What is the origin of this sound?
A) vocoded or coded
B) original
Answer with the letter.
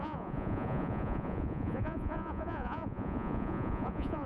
A